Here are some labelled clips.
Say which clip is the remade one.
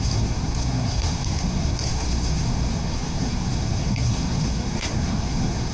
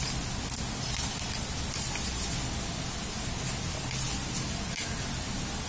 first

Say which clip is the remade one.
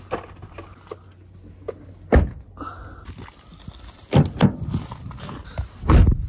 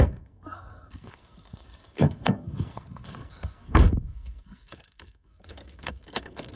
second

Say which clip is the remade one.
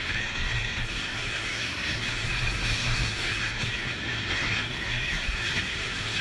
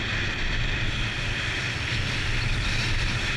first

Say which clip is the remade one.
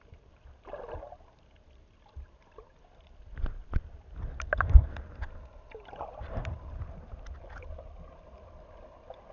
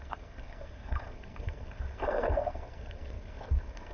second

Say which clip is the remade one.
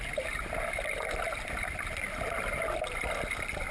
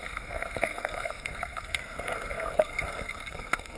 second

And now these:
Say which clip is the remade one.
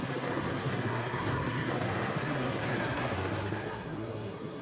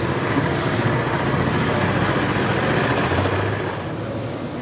first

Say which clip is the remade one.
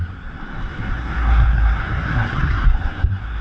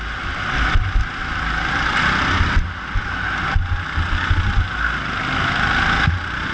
first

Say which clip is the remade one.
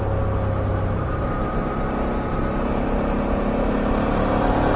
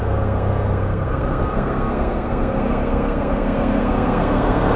second